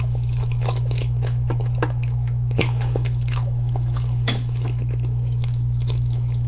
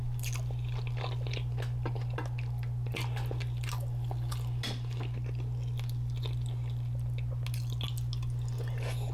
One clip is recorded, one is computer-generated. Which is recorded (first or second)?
second